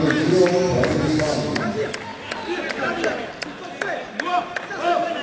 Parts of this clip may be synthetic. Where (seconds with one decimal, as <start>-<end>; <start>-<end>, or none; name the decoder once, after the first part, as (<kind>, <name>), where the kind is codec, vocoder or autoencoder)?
none